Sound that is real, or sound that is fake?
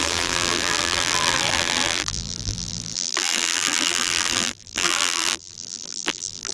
fake